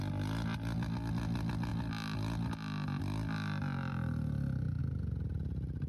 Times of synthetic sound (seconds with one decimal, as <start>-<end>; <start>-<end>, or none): none